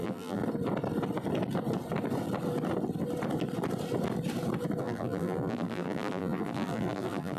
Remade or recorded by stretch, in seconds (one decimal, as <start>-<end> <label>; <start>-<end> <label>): 0.0-0.4 remade; 0.4-4.8 recorded; 4.8-7.4 remade